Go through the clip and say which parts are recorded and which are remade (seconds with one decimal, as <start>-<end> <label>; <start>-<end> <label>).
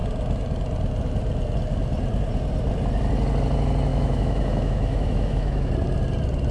0.0-3.9 recorded; 3.9-5.7 remade; 5.7-6.5 recorded